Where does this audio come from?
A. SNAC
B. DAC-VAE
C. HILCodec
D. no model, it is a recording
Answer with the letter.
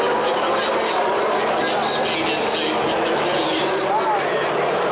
D